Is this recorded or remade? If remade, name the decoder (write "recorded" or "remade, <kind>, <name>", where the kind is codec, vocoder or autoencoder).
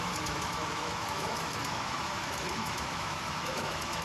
remade, autoencoder, DAC-VAE